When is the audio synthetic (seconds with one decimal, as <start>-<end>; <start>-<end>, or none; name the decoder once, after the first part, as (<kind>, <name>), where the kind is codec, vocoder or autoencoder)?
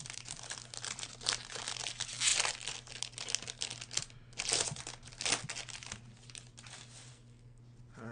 7.1-7.6 (codec, SNAC)